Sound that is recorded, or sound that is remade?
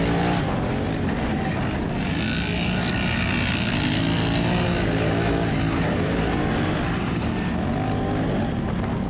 recorded